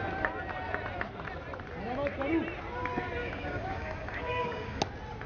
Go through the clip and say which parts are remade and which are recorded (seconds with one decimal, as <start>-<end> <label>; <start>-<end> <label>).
0.0-3.2 recorded; 3.2-4.8 remade; 4.8-5.3 recorded